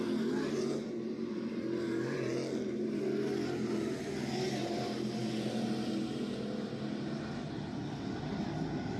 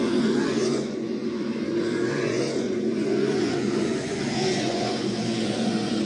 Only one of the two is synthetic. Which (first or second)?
second